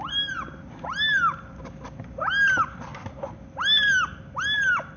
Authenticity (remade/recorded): recorded